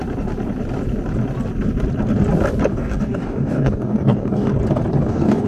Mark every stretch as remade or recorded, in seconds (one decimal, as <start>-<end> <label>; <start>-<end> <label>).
0.0-2.7 recorded; 2.7-4.5 remade; 4.5-5.0 recorded; 5.0-5.5 remade